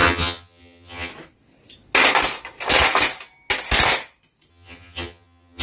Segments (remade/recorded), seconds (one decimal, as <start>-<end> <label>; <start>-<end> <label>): 0.0-1.1 remade; 1.1-4.5 recorded; 4.5-5.6 remade